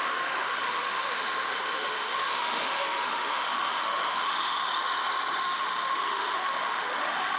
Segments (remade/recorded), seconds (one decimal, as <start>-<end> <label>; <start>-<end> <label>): 0.0-4.7 remade; 4.7-5.4 recorded; 5.4-7.4 remade